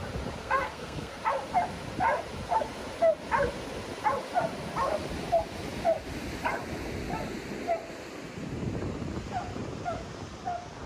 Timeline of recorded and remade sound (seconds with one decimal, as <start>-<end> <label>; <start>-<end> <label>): 0.0-0.4 recorded; 0.4-1.2 remade; 1.2-10.9 recorded

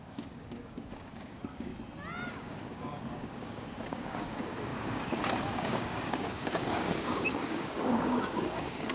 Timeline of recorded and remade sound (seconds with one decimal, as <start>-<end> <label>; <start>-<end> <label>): 0.0-1.7 remade; 1.7-2.3 recorded; 2.3-8.9 remade

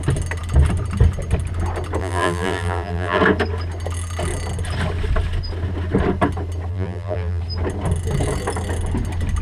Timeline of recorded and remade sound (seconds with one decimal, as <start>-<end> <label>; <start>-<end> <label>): 0.0-2.0 recorded; 2.0-3.2 remade; 3.2-6.7 recorded; 6.7-7.4 remade; 7.4-9.4 recorded

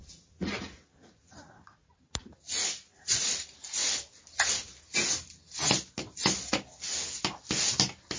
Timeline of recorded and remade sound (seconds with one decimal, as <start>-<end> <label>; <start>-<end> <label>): 0.0-1.9 remade; 1.9-2.6 recorded; 2.6-3.3 remade; 3.3-8.2 recorded

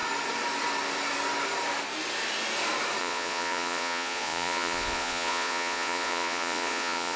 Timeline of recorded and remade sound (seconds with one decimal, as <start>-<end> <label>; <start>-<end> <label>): 0.0-3.0 recorded; 3.0-7.2 remade

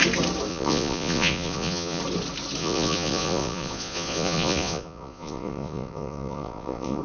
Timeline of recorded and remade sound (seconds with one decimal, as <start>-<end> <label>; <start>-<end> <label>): 0.0-0.5 recorded; 0.5-2.0 remade; 2.0-2.6 recorded; 2.6-7.0 remade

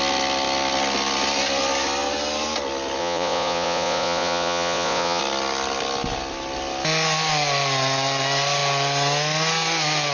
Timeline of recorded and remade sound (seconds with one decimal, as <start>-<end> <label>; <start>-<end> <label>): 0.0-3.0 recorded; 3.0-5.2 remade; 5.2-10.1 recorded